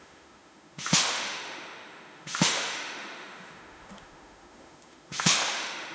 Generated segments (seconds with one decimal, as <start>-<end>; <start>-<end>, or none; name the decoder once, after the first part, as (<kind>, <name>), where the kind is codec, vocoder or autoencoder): 0.0-5.9 (autoencoder, DAC-VAE)